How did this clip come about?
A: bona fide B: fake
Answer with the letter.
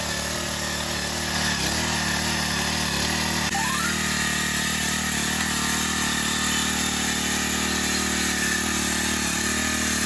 A